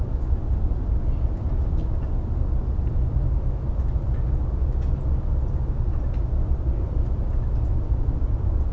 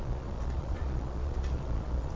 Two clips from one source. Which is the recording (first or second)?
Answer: first